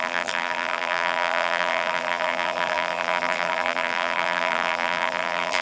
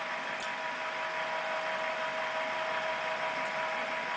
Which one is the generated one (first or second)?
first